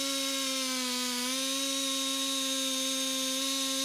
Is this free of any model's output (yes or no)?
yes